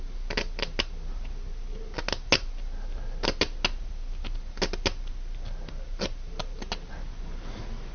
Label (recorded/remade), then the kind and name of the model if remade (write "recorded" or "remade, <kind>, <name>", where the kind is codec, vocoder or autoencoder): recorded